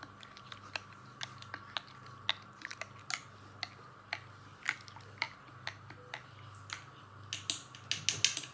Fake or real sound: real